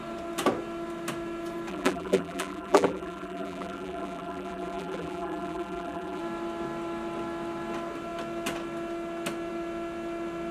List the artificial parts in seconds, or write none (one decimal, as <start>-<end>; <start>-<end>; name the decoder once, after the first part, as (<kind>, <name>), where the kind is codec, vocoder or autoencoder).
1.7-6.2 (vocoder, BigVGAN v2)